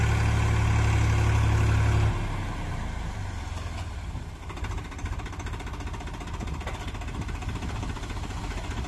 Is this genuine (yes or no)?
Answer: yes